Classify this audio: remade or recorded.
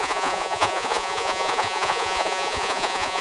remade